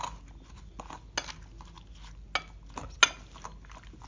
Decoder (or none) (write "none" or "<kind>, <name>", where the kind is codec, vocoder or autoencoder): none